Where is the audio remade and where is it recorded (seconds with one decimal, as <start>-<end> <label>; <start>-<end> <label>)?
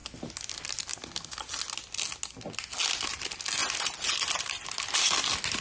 0.0-5.6 recorded